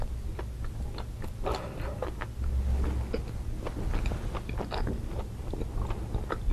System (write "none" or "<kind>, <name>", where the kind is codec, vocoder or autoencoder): none